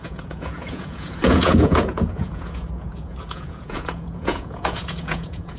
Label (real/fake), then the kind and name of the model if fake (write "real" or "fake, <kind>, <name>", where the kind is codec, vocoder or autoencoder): fake, vocoder, Vocos